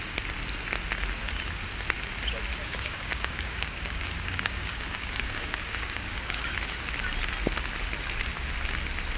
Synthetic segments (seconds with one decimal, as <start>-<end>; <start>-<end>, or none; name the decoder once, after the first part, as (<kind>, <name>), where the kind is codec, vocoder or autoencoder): 2.5-6.4 (codec, DAC)